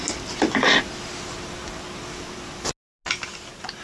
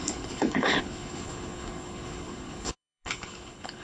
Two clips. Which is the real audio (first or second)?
first